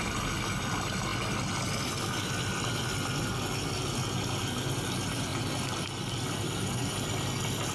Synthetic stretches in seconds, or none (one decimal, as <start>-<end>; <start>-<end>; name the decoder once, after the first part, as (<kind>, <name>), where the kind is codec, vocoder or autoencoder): none